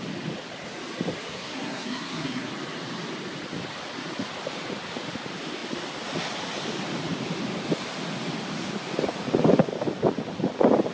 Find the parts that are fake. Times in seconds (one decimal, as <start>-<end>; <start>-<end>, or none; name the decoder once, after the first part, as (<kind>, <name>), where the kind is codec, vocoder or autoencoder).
1.3-2.5 (codec, SNAC)